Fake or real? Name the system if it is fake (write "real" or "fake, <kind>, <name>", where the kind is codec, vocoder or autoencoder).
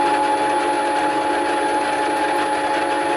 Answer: real